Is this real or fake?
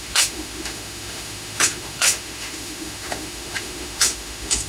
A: fake